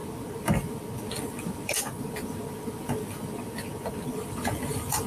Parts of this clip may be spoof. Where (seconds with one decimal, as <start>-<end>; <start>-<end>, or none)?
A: none